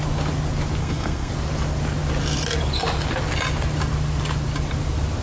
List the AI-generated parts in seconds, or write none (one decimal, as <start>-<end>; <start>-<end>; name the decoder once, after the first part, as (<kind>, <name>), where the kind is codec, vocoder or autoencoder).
0.8-1.3 (codec, SNAC)